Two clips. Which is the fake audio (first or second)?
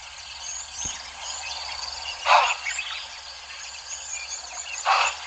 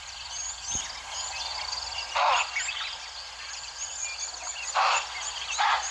first